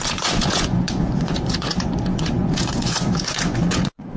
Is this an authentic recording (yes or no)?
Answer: no